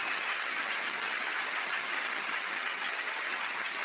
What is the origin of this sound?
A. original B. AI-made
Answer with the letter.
B